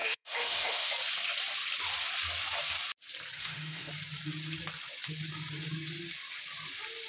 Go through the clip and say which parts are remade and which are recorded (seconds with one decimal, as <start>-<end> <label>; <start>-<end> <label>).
0.0-0.9 remade; 0.9-3.4 recorded; 3.4-3.9 remade; 3.9-7.1 recorded